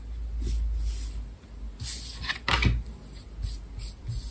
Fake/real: real